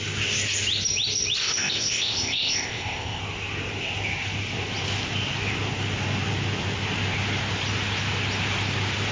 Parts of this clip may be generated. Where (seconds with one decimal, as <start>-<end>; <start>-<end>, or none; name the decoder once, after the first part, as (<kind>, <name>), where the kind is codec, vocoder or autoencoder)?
1.4-3.2 (codec, ZipCodec)